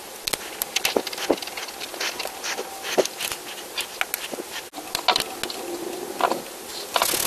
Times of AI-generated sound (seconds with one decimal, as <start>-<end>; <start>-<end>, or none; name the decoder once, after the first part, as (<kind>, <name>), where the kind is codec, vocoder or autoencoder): none